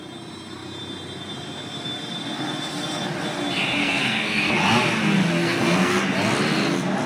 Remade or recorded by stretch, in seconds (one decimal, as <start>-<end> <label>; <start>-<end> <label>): 0.0-3.8 recorded; 3.8-4.6 remade; 4.6-5.4 recorded; 5.4-5.9 remade; 5.9-7.1 recorded